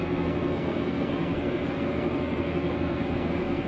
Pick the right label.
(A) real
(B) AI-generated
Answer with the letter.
B